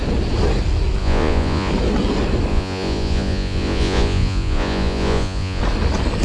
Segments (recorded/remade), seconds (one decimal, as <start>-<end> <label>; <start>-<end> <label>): 0.0-1.0 recorded; 1.0-1.7 remade; 1.7-2.5 recorded; 2.5-5.6 remade; 5.6-6.2 recorded